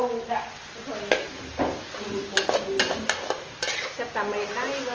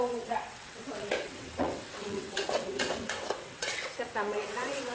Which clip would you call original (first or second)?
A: first